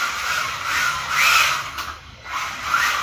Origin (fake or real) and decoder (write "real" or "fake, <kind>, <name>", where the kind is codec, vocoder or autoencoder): real